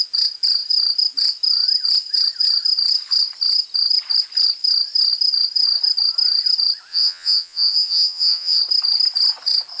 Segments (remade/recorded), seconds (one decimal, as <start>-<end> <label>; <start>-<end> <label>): 0.0-6.9 recorded; 6.9-8.6 remade; 8.6-9.8 recorded